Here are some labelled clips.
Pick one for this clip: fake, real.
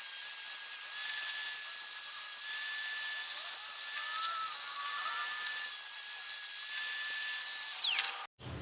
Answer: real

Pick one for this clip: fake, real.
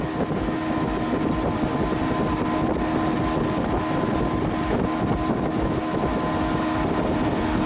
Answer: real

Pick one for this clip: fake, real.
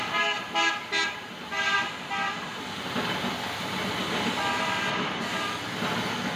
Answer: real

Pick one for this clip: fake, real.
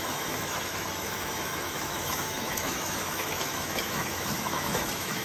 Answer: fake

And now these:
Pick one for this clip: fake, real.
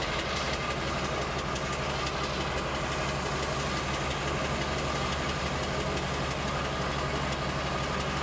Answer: real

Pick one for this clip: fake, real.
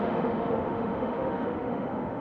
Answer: fake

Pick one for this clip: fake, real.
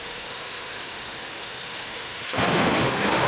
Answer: fake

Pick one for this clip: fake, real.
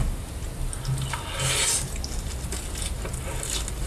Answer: real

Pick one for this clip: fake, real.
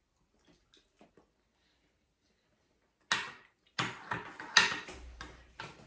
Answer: real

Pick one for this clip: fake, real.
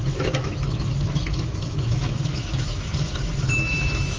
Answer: fake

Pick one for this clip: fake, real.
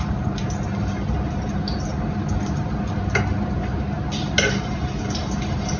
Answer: real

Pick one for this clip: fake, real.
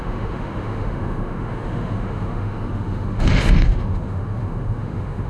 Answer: fake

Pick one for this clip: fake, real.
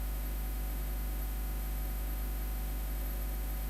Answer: fake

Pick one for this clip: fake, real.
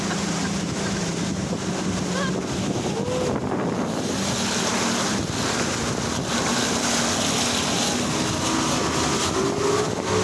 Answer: real